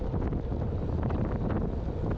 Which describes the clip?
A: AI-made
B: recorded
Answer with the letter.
B